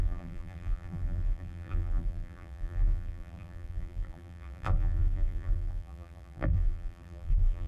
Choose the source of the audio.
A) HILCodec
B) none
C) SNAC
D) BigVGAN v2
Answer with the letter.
D